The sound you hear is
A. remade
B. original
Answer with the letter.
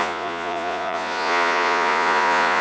A